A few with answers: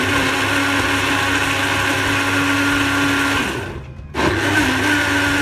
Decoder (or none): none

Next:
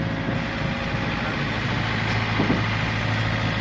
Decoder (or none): none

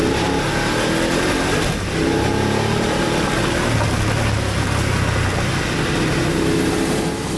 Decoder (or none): none